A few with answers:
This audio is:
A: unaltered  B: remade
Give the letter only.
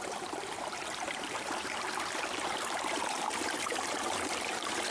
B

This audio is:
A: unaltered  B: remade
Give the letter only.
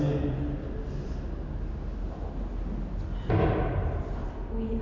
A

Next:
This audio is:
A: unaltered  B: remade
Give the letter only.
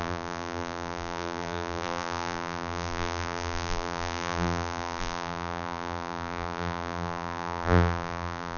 B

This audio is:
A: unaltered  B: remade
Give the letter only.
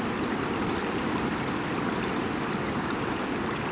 A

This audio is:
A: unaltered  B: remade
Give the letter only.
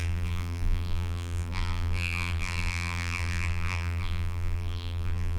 B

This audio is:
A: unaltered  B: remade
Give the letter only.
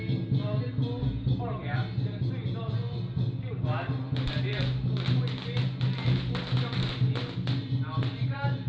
A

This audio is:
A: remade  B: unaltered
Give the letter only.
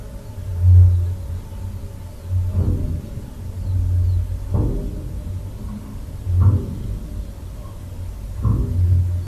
B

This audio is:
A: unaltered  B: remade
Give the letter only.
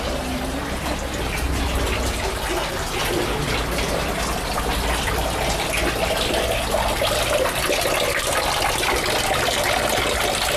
A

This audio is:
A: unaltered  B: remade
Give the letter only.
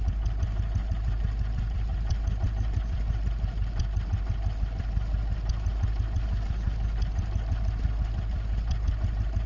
A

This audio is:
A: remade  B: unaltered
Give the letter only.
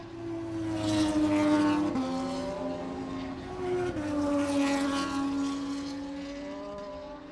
B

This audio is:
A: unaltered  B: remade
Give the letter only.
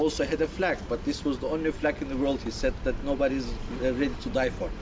A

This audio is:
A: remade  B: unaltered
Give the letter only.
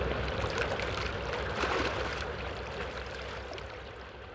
A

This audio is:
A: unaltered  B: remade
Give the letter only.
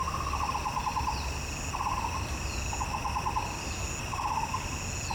A